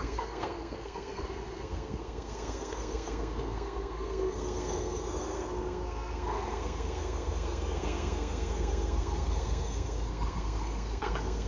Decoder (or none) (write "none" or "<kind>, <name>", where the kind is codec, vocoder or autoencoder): codec, SNAC